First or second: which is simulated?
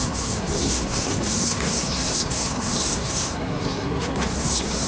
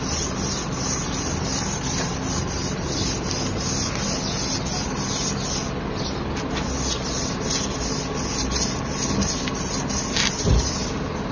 first